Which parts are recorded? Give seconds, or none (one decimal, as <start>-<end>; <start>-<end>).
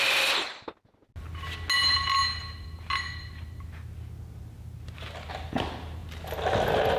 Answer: 0.0-7.0